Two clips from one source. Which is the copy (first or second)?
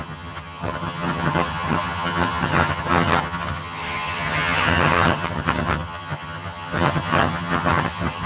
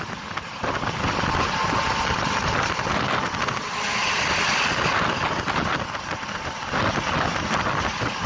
first